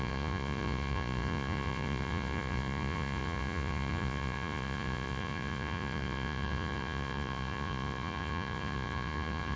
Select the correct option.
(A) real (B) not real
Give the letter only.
B